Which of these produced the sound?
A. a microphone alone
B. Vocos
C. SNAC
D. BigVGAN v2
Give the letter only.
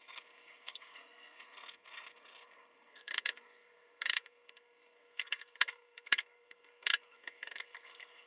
C